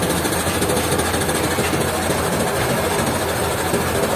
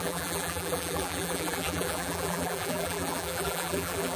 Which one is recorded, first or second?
first